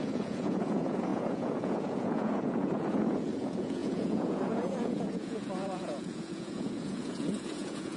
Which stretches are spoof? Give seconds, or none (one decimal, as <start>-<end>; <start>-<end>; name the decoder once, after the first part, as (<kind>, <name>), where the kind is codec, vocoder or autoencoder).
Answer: 0.0-8.0 (vocoder, Vocos)